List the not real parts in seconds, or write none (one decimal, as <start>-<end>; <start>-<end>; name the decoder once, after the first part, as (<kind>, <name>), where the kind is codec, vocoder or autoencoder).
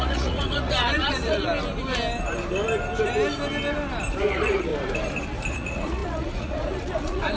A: 0.0-1.5 (vocoder, Vocos); 4.2-4.7; 5.5-7.4